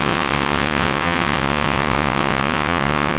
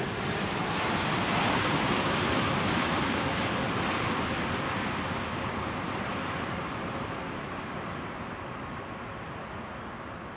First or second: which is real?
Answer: second